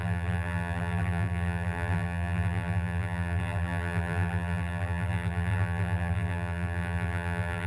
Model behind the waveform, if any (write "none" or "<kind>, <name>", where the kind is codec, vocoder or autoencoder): vocoder, BigVGAN v2